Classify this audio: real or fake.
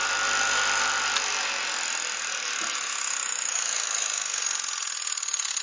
real